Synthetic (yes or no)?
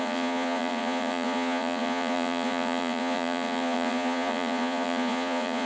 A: yes